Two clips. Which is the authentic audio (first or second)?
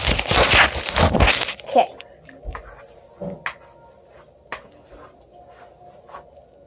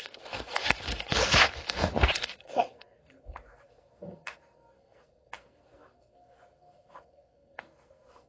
first